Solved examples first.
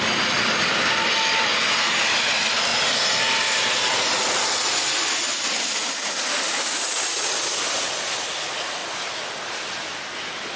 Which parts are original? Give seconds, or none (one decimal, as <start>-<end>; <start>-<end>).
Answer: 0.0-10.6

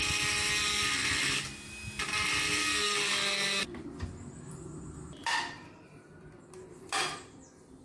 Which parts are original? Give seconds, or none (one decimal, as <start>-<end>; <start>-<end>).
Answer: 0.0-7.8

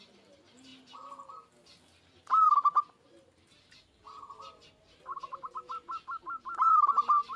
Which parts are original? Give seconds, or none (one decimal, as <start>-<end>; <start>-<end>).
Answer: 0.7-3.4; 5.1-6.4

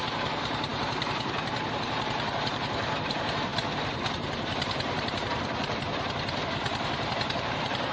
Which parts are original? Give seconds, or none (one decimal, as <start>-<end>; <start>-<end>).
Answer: 3.5-4.1

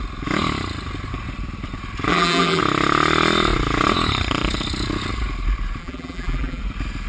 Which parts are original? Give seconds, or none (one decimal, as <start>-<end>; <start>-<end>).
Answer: 0.0-2.1; 2.6-5.8; 6.6-7.1